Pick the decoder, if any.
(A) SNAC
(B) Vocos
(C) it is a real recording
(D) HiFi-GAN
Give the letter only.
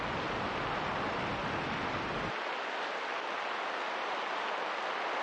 C